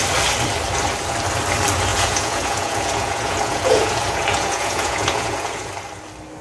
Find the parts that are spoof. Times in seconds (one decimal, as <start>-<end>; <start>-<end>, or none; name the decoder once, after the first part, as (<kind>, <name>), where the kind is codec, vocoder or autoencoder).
1.9-5.7 (vocoder, Vocos)